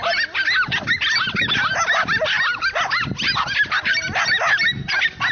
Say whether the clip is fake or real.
real